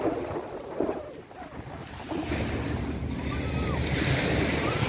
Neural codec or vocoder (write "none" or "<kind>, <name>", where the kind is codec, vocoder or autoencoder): none